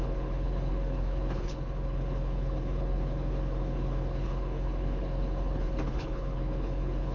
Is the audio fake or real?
fake